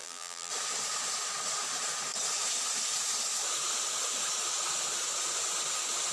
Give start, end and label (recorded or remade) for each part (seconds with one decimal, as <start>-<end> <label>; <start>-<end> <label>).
0.0-0.5 remade; 0.5-6.1 recorded